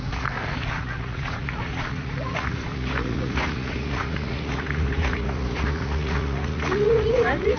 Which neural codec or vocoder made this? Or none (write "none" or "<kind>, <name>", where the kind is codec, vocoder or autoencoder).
vocoder, Vocos